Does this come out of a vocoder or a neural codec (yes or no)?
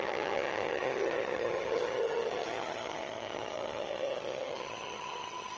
yes